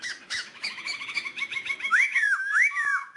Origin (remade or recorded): remade